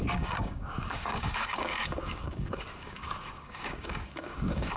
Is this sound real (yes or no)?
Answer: no